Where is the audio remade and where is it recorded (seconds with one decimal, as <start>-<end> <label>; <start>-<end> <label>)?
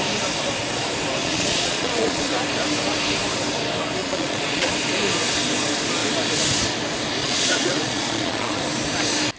0.0-1.2 recorded; 1.2-2.3 remade; 2.3-4.0 recorded; 4.0-4.7 remade; 4.7-7.2 recorded; 7.2-8.6 remade; 8.6-9.4 recorded